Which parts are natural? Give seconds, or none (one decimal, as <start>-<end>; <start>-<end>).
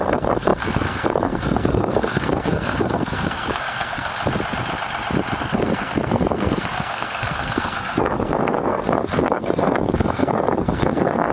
4.1-5.4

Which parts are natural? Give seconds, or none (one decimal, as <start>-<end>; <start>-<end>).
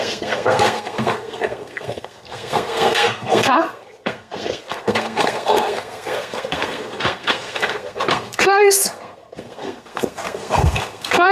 none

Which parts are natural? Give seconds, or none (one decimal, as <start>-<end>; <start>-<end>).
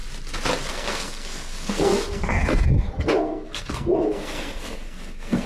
0.0-0.7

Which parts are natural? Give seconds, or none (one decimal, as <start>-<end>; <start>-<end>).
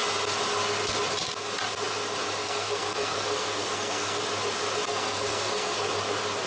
0.0-2.4; 4.2-4.9; 5.9-6.5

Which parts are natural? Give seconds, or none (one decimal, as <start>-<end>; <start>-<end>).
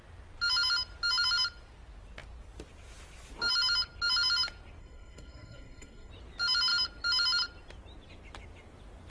0.0-4.8; 6.1-9.1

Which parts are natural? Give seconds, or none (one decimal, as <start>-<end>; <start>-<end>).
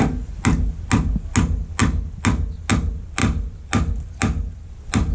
0.0-5.1